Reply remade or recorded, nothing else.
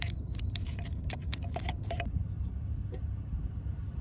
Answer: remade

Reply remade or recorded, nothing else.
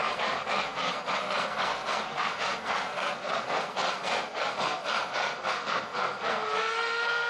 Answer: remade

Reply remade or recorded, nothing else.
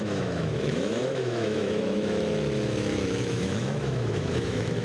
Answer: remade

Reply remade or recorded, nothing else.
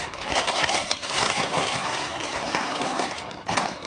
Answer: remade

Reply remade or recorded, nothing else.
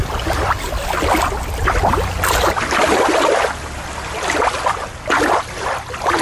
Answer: recorded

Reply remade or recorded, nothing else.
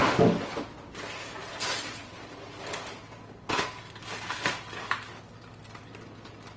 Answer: recorded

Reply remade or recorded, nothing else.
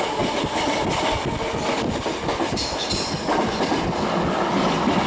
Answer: remade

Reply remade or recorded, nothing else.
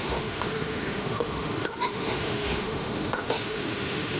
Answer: remade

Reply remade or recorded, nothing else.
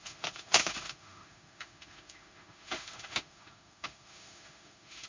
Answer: remade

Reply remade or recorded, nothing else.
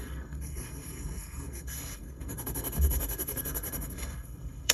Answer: remade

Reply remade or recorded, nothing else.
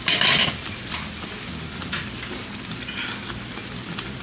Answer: recorded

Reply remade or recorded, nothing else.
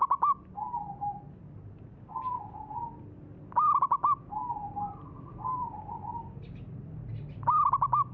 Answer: recorded